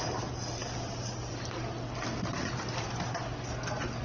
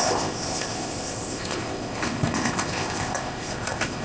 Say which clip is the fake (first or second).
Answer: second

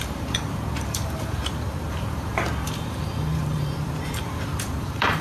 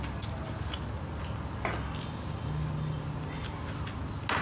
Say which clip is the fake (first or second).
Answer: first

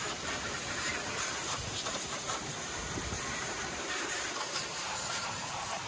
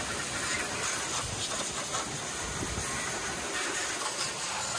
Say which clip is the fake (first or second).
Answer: first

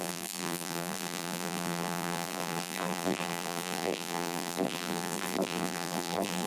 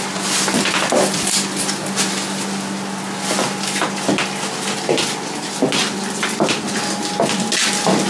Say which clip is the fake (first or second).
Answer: first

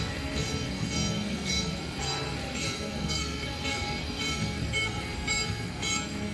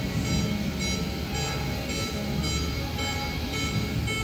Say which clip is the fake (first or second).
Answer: first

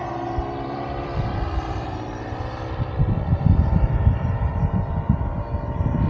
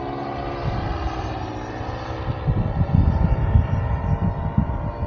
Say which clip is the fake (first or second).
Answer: first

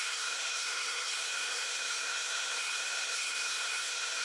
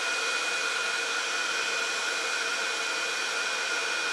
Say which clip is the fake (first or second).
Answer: first